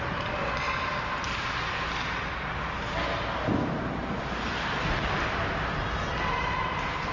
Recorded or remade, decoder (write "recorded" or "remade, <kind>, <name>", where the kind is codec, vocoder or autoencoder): recorded